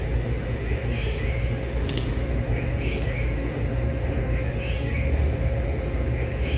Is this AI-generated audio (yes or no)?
yes